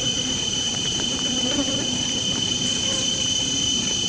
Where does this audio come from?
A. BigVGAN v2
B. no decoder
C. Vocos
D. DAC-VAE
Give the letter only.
A